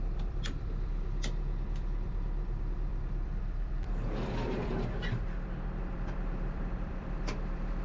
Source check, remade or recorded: remade